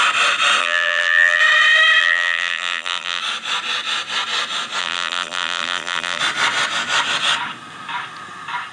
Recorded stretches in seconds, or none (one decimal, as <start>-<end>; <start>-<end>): 0.0-0.6; 1.4-2.0; 3.2-4.8; 6.2-8.7